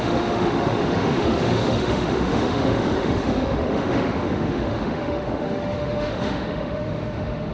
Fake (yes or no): yes